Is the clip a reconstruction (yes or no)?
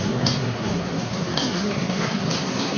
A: yes